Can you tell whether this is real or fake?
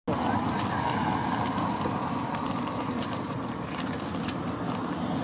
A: real